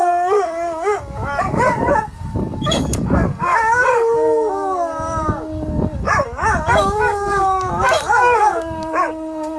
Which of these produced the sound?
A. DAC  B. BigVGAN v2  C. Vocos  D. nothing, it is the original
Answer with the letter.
A